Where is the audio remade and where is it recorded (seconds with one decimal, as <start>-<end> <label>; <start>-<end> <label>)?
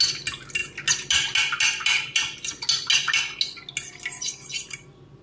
0.0-5.2 recorded